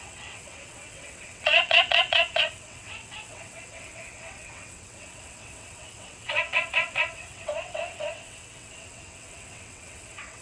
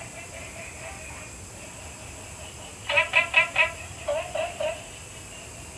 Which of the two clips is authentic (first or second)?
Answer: second